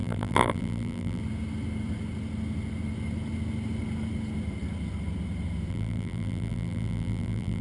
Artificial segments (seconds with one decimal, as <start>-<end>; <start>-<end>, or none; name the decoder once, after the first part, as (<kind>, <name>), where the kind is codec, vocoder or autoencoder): 0.0-1.2 (vocoder, BigVGAN v2); 5.7-7.6